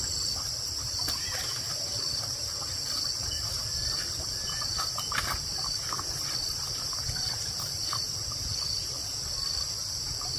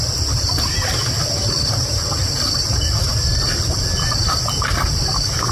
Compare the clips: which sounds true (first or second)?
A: second